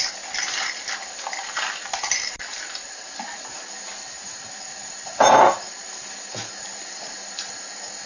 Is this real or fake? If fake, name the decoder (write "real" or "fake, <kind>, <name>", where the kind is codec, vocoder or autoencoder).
fake, vocoder, BigVGAN v2